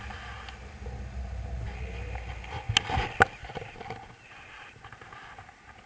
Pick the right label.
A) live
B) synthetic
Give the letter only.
A